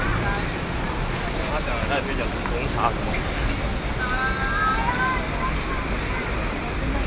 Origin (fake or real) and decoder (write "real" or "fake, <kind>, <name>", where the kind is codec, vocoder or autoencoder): real